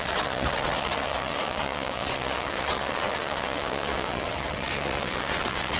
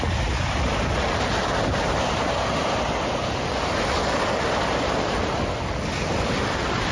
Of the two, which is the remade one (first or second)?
first